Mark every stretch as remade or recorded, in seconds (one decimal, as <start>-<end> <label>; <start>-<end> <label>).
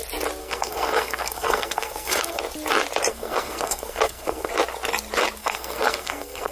0.0-0.4 recorded; 0.4-2.4 remade; 2.4-3.1 recorded; 3.1-4.5 remade; 4.5-5.4 recorded; 5.4-6.5 remade